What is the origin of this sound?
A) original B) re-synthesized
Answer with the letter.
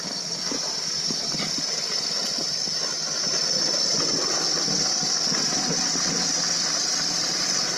B